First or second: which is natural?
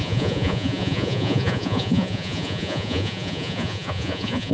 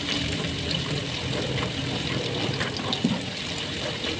second